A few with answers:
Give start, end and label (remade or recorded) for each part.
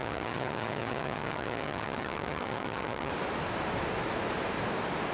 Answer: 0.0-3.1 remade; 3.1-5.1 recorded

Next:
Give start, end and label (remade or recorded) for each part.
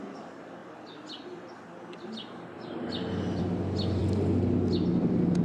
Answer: 0.0-5.4 recorded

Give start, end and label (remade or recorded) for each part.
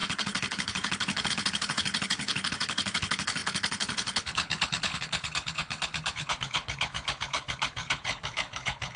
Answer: 0.0-9.0 remade